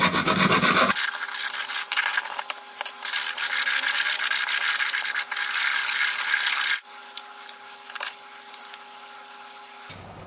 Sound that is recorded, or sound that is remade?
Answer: recorded